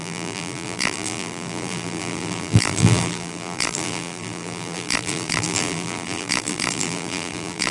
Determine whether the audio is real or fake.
fake